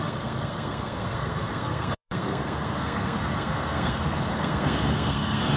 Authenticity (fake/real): fake